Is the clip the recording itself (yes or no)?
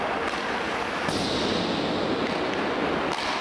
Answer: yes